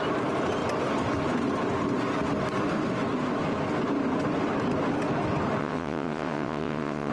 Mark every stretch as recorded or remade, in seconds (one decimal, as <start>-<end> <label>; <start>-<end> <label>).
0.0-5.6 recorded; 5.6-7.1 remade